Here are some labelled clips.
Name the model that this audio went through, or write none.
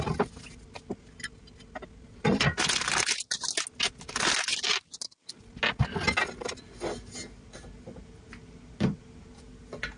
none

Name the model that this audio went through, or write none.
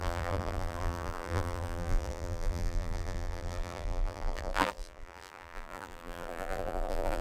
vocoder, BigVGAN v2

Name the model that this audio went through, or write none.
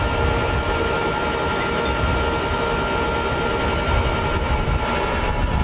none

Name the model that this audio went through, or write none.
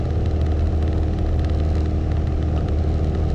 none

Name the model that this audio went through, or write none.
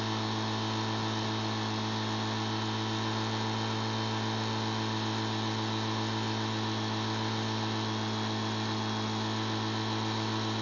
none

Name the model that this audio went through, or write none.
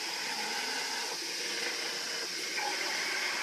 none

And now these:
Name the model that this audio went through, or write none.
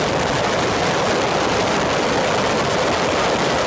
none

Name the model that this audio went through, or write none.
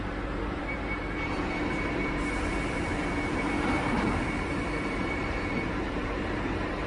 vocoder, BigVGAN v2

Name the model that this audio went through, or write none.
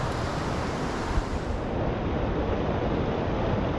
none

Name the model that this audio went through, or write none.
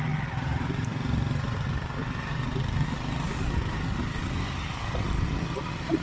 none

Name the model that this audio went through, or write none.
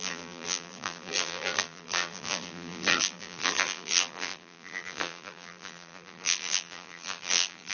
vocoder, BigVGAN v2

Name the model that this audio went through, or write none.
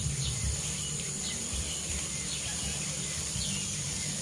vocoder, BigVGAN v2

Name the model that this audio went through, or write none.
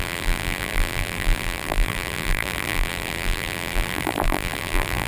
vocoder, BigVGAN v2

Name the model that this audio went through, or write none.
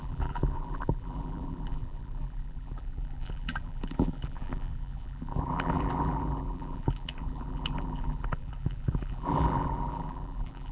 vocoder, BigVGAN v2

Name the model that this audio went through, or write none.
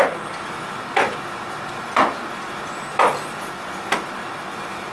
none